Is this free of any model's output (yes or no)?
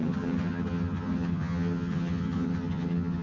no